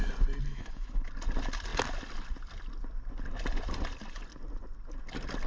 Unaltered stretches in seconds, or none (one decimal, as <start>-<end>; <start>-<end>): 0.0-0.5; 1.1-5.5